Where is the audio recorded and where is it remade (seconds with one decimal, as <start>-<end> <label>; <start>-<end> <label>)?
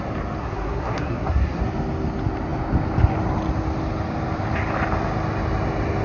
0.0-0.4 recorded; 0.4-1.6 remade; 1.6-6.0 recorded